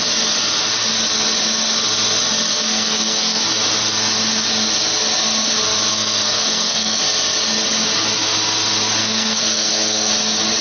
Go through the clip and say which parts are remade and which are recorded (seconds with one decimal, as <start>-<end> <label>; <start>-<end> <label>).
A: 0.0-2.5 recorded; 2.5-3.4 remade; 3.4-5.9 recorded; 5.9-7.0 remade; 7.0-9.0 recorded; 9.0-10.1 remade; 10.1-10.6 recorded